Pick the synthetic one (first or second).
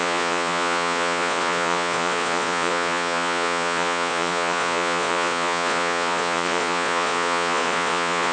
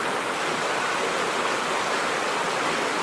first